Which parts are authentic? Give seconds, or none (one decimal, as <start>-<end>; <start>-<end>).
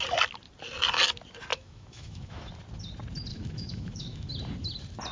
0.0-1.5; 2.5-3.3; 4.3-5.1